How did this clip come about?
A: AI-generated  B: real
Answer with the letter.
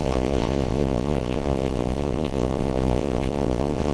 A